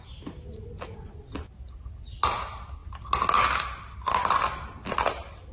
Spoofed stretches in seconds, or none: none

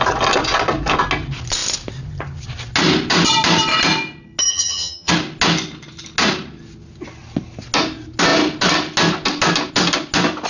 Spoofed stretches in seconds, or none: 4.5-5.1 (vocoder, HiFi-GAN)